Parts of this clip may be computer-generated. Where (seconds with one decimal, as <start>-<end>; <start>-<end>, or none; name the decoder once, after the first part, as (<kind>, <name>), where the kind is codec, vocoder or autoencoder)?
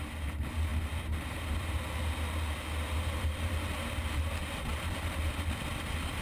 0.7-1.7 (vocoder, BigVGAN v2)